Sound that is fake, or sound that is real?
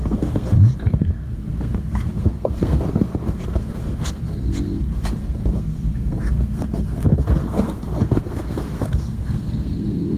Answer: fake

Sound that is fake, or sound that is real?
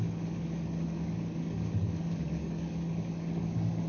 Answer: fake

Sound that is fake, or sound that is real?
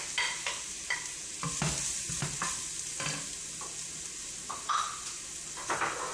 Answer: real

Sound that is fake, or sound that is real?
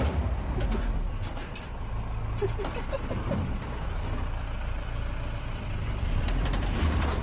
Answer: fake